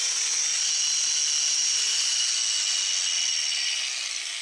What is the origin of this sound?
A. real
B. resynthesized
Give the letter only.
A